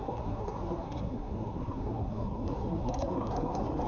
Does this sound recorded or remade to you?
remade